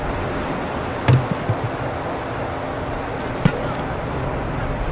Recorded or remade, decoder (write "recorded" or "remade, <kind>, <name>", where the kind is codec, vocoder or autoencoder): recorded